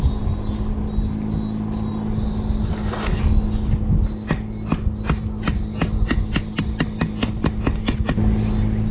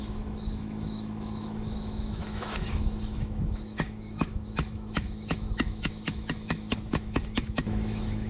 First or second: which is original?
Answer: first